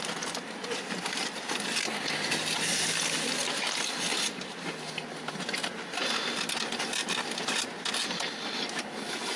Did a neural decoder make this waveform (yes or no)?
no